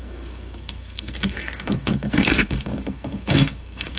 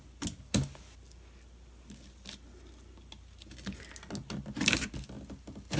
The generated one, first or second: first